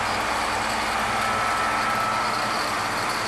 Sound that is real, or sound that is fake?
real